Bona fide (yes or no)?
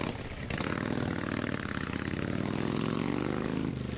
yes